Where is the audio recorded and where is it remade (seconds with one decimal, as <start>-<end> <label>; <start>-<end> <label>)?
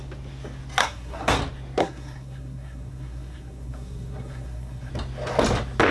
0.0-0.8 recorded; 0.8-1.4 remade; 1.4-1.8 recorded; 1.8-4.9 remade; 4.9-5.9 recorded